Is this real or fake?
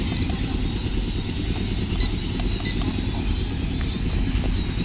real